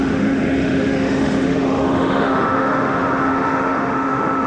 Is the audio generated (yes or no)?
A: yes